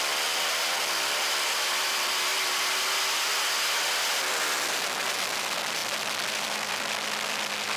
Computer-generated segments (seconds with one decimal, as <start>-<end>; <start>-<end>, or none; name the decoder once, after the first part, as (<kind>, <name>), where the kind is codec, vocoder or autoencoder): none